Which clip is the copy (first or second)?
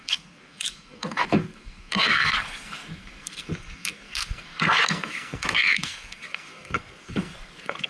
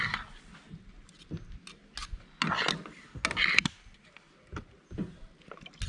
first